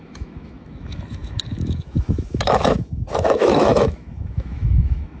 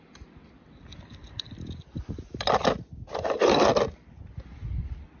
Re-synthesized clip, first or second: first